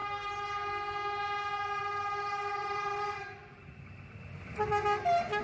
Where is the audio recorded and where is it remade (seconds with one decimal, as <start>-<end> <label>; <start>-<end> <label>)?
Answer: 0.0-2.6 recorded; 2.6-3.4 remade; 3.4-5.4 recorded